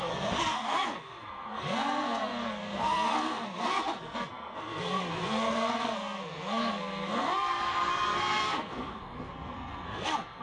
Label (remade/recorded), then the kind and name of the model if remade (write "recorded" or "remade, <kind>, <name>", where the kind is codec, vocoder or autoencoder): remade, codec, SNAC